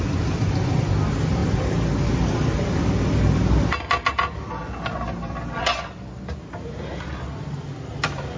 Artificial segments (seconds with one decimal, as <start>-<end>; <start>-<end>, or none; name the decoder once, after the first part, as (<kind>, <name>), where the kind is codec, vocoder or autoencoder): none